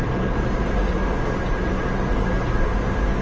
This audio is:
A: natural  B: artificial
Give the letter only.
A